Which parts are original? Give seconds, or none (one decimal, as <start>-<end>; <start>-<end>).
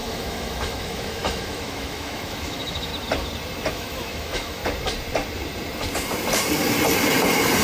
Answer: 2.9-3.7; 4.6-7.6